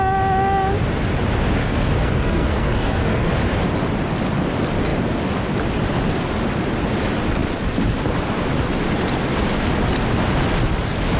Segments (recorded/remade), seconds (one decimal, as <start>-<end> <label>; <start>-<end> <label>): 0.0-1.6 recorded; 1.6-3.3 remade; 3.3-11.2 recorded